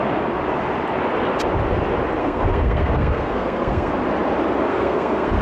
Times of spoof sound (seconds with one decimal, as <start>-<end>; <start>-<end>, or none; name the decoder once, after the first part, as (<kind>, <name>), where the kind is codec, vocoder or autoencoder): 2.2-3.9 (codec, SNAC); 4.7-5.4